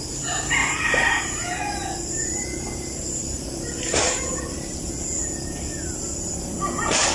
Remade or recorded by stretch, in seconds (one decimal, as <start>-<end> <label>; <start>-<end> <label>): 0.0-0.6 recorded; 0.6-4.9 remade; 4.9-5.7 recorded; 5.7-6.3 remade; 6.3-7.1 recorded